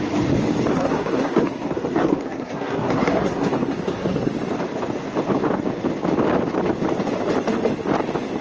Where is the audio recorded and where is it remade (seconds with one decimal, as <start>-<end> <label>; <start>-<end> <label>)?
0.0-0.7 recorded; 0.7-4.3 remade; 4.3-8.4 recorded